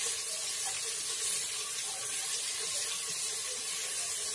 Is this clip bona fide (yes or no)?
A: yes